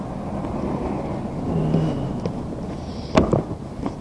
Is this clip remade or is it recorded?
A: recorded